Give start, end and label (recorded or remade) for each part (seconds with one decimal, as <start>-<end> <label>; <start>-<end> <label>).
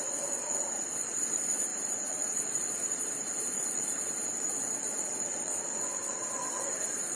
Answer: 0.0-7.2 remade